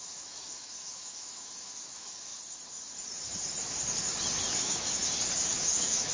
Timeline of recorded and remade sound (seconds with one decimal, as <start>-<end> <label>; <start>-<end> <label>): 0.0-2.3 remade; 2.3-4.6 recorded; 4.6-5.0 remade; 5.0-5.5 recorded; 5.5-6.1 remade